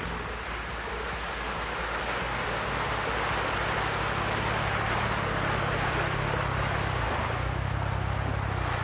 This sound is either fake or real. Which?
real